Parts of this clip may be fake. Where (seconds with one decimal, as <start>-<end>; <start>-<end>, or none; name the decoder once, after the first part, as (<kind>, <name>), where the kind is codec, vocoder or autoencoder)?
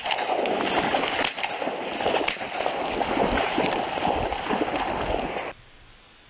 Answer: none